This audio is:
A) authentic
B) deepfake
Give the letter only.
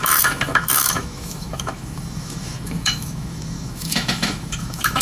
B